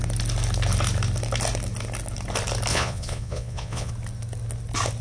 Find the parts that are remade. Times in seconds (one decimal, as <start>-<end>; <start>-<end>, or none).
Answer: 2.7-3.9